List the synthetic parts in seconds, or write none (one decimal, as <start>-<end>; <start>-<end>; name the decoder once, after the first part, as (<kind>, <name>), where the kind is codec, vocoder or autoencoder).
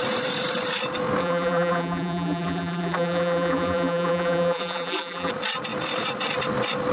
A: 1.2-5.3 (vocoder, BigVGAN v2)